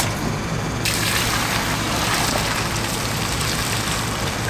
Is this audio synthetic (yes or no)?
yes